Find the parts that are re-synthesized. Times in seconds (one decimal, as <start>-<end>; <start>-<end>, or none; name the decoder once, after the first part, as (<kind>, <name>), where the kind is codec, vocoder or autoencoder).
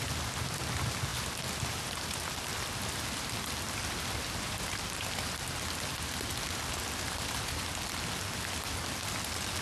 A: none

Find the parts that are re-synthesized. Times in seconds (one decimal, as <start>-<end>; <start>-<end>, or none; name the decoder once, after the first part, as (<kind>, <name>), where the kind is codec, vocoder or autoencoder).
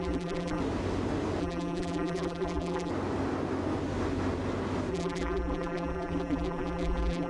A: 0.0-0.6 (vocoder, BigVGAN v2); 1.4-2.9; 4.9-7.3